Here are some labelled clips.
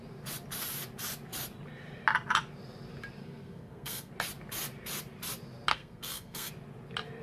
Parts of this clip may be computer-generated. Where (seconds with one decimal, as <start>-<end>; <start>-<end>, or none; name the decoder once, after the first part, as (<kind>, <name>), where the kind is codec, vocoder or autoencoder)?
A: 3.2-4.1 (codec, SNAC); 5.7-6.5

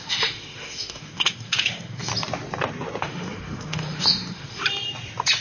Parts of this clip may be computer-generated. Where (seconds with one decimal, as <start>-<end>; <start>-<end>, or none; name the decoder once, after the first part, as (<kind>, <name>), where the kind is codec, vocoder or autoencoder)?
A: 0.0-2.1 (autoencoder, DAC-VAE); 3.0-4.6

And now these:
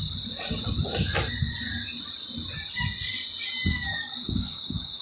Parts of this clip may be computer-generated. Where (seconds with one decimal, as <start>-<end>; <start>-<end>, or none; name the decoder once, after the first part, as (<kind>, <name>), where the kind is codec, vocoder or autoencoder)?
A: 3.7-5.0 (codec, DAC)

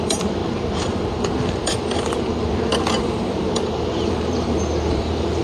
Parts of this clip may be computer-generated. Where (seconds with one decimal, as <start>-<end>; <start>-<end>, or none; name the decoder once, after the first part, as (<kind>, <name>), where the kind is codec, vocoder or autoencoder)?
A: 0.0-5.4 (vocoder, BigVGAN v2)

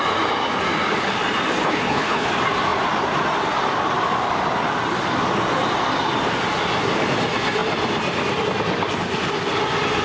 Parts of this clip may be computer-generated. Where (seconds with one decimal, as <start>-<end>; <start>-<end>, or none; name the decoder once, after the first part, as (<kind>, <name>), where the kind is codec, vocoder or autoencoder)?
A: 1.6-2.3 (codec, HILCodec)

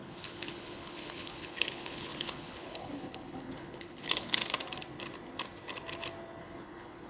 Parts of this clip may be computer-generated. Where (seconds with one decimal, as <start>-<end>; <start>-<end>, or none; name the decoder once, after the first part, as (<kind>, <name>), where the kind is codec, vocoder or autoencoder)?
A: 0.0-4.4 (codec, HILCodec); 6.4-7.1